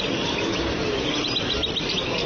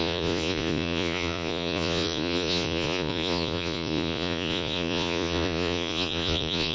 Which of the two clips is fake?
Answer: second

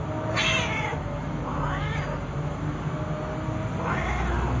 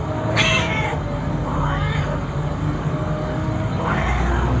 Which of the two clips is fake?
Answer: second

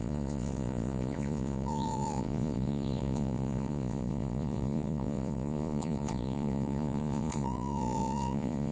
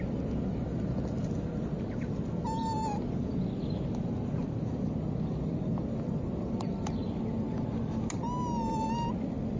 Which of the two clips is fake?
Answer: first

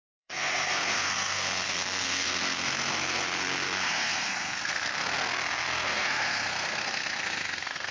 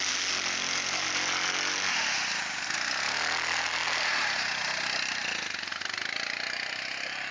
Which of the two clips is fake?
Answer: first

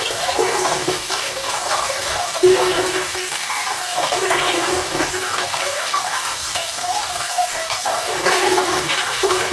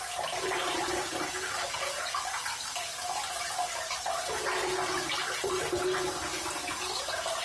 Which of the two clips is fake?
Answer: first